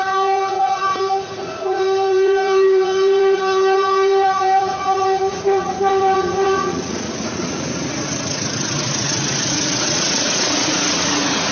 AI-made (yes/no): yes